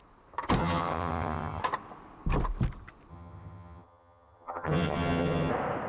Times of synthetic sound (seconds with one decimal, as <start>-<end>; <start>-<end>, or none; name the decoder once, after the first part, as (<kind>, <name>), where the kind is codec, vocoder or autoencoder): 0.6-1.6 (vocoder, HiFi-GAN); 3.1-5.5